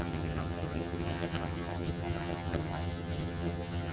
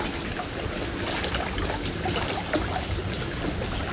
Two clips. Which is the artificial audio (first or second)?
first